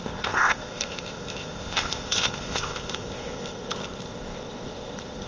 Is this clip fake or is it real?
fake